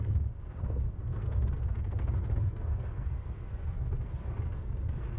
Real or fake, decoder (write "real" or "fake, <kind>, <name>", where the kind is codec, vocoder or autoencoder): fake, codec, SNAC